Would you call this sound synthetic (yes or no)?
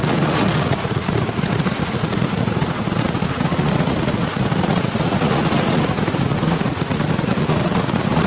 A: yes